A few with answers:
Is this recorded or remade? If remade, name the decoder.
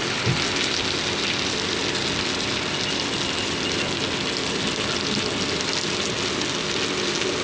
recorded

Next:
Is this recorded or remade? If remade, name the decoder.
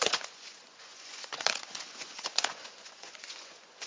remade, vocoder, Vocos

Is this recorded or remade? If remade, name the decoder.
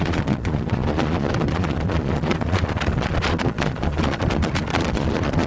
remade, vocoder, Vocos